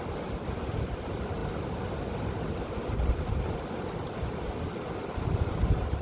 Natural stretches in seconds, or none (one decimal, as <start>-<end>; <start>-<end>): 0.0-6.0